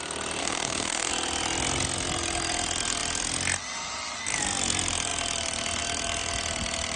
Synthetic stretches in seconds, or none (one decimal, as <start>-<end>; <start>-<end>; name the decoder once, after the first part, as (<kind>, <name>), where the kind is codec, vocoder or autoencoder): 0.4-1.1 (codec, DAC)